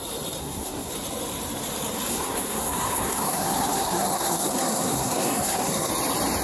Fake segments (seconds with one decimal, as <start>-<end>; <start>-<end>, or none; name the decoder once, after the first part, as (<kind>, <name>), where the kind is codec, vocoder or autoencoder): 0.4-0.9 (codec, SNAC); 2.1-5.9